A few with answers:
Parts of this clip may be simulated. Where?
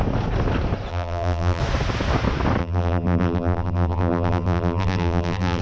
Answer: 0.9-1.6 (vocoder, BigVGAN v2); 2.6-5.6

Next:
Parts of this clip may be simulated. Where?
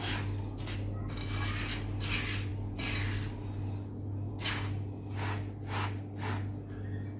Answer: none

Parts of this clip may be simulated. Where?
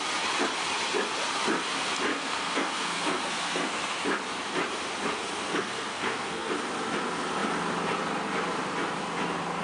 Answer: 2.1-4.0 (codec, SNAC); 5.5-6.5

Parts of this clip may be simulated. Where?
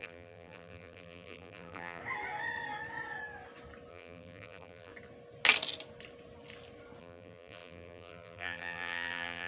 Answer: 0.0-2.0 (vocoder, BigVGAN v2); 3.9-4.9; 7.0-9.5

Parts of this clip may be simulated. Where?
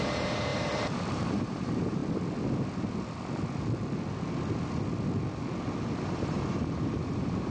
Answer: 0.0-2.0 (vocoder, BigVGAN v2); 6.0-7.5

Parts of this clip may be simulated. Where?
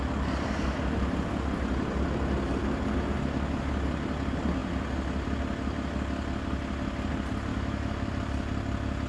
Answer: 7.5-8.1 (autoencoder, DAC-VAE)